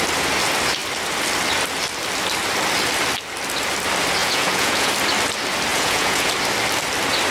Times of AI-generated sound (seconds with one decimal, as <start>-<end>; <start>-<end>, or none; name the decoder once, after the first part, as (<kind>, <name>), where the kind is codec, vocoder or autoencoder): 4.2-4.9 (vocoder, Vocos); 5.7-6.3